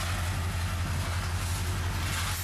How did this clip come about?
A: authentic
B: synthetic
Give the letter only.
A